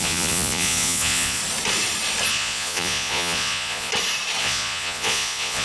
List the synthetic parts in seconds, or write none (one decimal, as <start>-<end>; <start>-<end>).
0.0-1.4; 2.3-3.9; 4.4-5.6